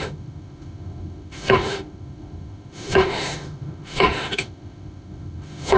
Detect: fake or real fake